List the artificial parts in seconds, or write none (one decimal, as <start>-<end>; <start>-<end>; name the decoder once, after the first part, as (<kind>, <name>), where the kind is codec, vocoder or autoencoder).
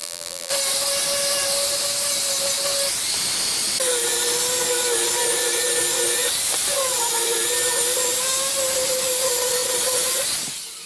0.0-0.5 (vocoder, BigVGAN v2)